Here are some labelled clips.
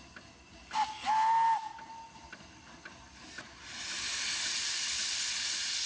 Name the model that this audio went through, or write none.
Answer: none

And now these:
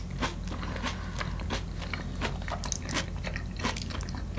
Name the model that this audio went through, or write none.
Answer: none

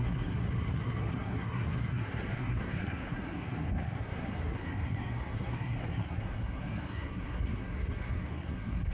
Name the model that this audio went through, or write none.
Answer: codec, SNAC